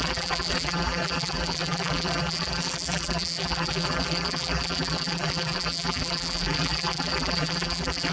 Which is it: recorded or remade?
remade